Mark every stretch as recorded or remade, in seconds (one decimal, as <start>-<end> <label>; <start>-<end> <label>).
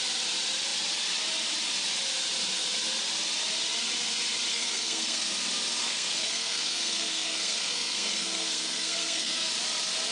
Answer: 0.0-4.5 recorded; 4.5-5.3 remade; 5.3-5.8 recorded; 5.8-9.5 remade; 9.5-10.1 recorded